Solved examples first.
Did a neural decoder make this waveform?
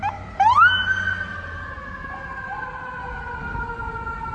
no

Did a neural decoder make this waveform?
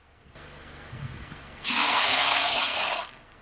yes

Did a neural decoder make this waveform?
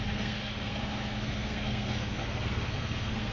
yes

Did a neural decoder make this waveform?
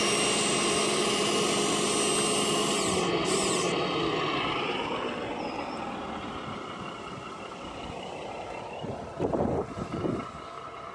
no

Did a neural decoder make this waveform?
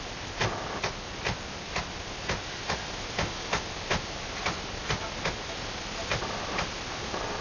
no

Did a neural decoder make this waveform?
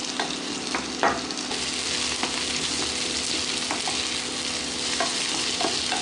no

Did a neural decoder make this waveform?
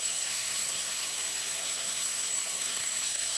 yes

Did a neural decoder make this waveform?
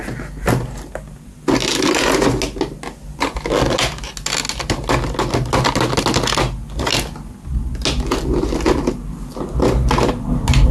no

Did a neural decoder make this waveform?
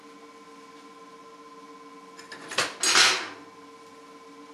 no